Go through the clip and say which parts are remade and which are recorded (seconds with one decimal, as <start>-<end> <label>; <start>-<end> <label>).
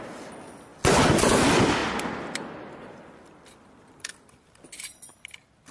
0.0-5.7 recorded